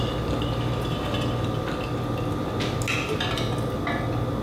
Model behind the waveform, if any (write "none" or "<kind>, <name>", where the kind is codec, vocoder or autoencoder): none